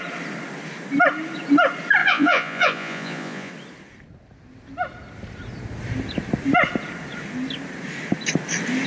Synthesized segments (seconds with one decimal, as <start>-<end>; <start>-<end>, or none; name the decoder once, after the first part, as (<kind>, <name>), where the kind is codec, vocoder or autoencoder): 2.0-3.5 (vocoder, Vocos)